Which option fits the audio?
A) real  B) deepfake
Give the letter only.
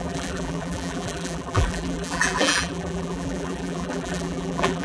B